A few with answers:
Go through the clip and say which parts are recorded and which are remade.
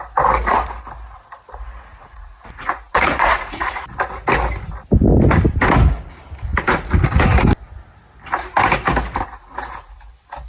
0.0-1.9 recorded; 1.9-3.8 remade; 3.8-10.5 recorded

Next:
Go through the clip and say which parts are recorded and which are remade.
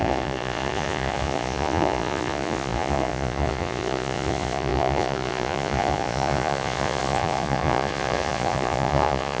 0.0-9.4 remade